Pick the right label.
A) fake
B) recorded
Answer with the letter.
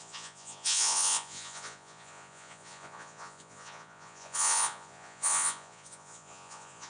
A